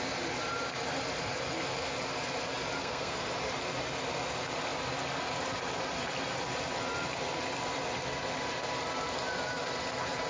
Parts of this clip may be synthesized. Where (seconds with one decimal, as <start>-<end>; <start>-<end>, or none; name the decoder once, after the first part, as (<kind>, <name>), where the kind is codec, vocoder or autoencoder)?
2.8-3.3 (codec, SNAC)